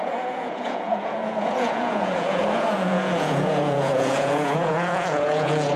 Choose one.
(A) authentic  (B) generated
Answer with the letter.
B